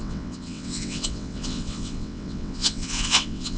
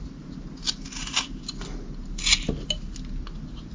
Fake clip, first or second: first